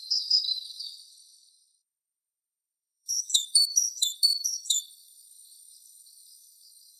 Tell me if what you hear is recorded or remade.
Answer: remade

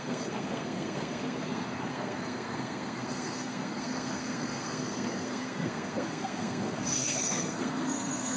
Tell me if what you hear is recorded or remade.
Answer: remade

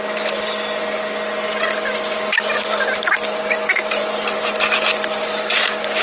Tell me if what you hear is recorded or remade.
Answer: recorded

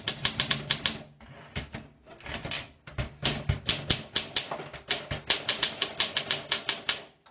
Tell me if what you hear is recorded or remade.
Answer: recorded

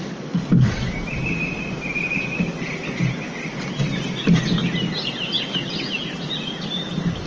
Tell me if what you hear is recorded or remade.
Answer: recorded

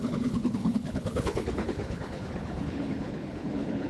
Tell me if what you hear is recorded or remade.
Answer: remade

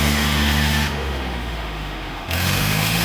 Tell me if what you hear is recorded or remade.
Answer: remade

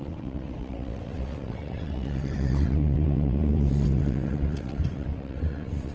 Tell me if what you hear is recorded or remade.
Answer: remade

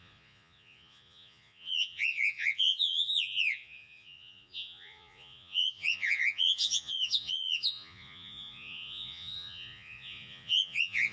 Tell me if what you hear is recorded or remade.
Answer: remade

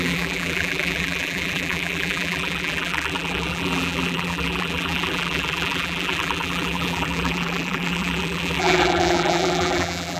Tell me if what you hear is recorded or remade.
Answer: remade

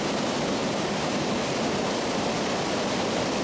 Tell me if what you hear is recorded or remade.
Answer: recorded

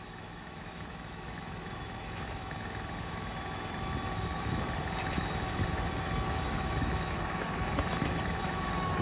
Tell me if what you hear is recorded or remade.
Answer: remade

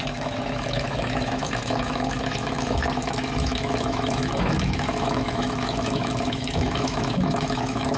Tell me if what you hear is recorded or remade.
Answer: remade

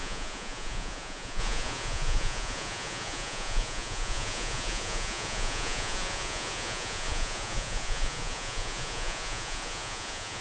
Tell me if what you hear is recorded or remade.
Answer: remade